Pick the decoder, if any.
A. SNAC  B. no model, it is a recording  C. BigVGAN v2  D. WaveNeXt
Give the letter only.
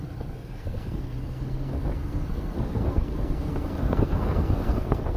A